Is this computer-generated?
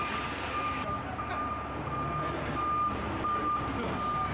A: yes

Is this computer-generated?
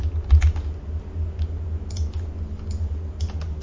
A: no